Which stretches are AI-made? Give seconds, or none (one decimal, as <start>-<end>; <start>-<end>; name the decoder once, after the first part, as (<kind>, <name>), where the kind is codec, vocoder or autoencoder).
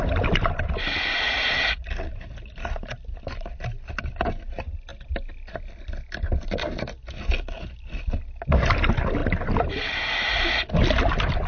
none